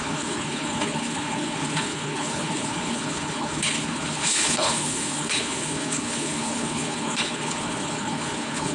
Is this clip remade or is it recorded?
remade